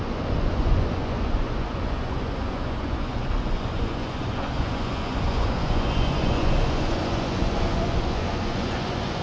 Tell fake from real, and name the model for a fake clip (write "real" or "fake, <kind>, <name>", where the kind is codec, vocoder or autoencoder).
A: fake, vocoder, Vocos